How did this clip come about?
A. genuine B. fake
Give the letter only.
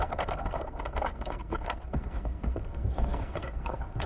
B